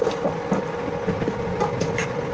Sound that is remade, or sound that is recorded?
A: recorded